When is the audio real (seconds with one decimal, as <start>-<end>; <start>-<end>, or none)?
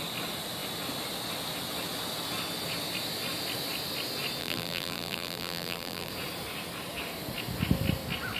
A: 0.0-4.4; 6.1-8.4